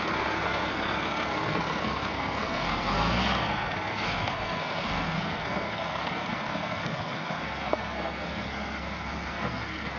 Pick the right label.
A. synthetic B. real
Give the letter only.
A